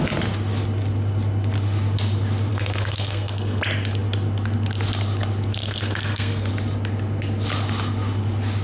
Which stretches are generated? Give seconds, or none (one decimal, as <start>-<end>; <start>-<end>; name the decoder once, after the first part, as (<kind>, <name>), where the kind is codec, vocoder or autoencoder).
2.5-3.6 (codec, SNAC); 5.6-6.5